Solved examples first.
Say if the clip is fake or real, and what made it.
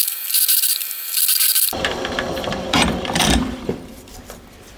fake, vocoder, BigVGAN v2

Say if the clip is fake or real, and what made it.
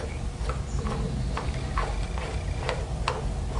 real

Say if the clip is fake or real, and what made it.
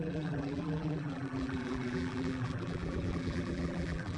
fake, vocoder, BigVGAN v2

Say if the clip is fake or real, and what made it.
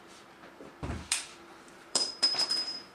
fake, vocoder, BigVGAN v2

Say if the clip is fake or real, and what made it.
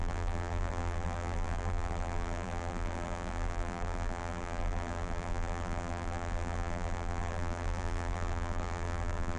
fake, vocoder, BigVGAN v2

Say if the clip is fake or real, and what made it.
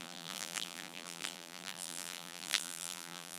fake, vocoder, BigVGAN v2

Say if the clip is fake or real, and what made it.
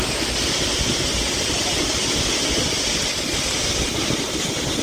fake, vocoder, BigVGAN v2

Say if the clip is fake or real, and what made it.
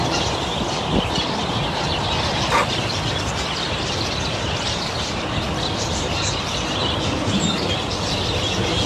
real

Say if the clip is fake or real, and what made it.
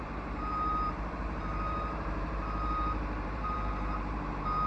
fake, vocoder, BigVGAN v2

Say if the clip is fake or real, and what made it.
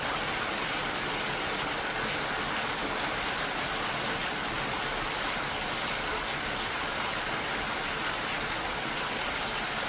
real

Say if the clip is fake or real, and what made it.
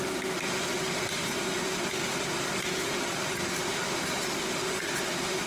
real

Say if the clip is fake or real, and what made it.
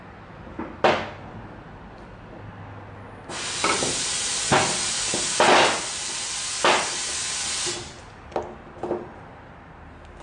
real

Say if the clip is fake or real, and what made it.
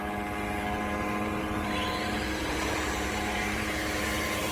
fake, vocoder, BigVGAN v2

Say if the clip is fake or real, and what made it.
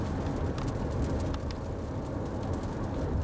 real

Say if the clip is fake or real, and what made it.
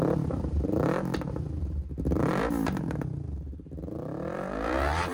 fake, vocoder, BigVGAN v2